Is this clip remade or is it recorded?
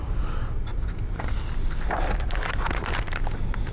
recorded